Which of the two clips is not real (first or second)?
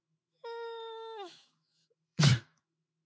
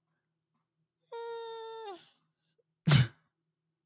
first